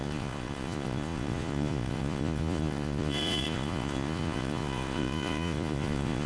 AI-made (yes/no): yes